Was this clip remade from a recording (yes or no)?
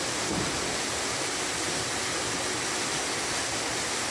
no